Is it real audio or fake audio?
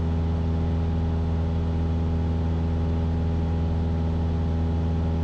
real